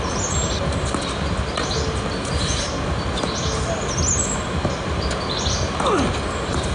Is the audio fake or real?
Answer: real